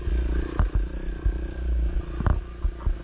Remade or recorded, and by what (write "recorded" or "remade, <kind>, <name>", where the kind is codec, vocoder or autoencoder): recorded